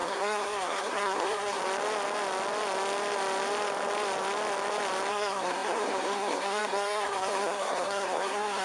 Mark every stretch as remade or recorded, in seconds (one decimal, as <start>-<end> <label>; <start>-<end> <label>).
0.0-1.6 remade; 1.6-5.1 recorded; 5.1-8.6 remade